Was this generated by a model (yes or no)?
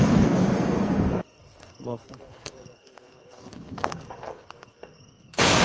yes